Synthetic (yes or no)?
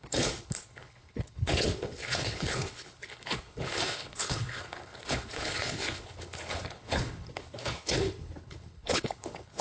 yes